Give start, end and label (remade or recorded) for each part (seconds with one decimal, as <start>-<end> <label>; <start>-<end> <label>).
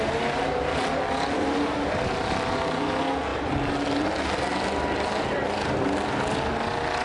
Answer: 0.0-7.0 recorded